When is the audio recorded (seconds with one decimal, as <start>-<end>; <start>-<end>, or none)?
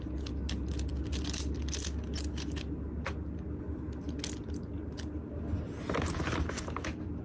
0.0-7.2